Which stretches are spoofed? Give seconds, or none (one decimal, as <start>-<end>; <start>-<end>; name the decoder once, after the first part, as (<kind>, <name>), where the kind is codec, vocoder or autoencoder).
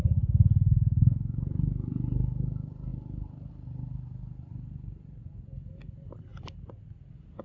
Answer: none